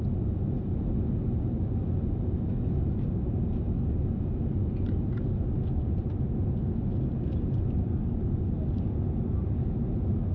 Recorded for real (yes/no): yes